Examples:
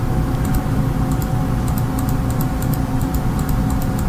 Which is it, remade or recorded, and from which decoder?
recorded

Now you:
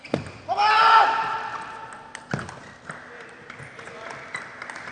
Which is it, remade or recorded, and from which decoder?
recorded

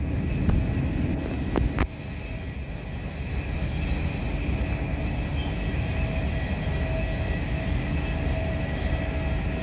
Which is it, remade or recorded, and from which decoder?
recorded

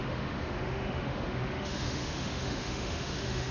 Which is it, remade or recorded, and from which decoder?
remade, autoencoder, DAC-VAE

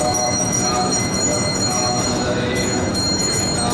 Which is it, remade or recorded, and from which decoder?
remade, autoencoder, DAC-VAE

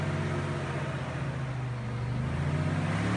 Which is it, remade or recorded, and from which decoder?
recorded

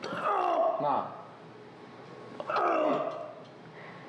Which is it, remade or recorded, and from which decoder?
recorded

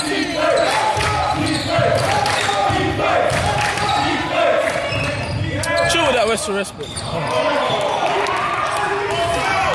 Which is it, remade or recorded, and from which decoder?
recorded